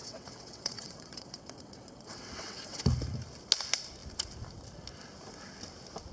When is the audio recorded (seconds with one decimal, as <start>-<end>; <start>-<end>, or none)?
2.8-6.1